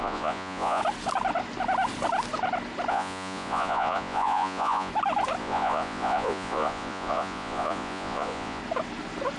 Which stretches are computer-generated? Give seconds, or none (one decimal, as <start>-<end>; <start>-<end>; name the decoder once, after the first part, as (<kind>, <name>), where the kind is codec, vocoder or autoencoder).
0.0-0.8 (vocoder, Vocos); 2.9-4.9; 5.4-8.6